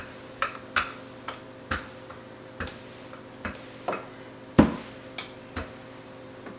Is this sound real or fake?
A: real